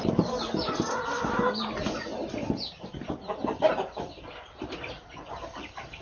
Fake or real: real